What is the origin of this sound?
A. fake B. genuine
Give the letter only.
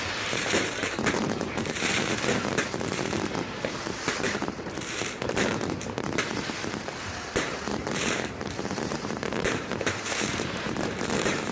A